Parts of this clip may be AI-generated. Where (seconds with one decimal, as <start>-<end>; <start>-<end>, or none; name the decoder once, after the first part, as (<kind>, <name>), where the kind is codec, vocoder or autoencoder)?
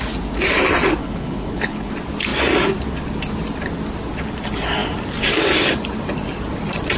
1.0-1.9 (codec, HILCodec)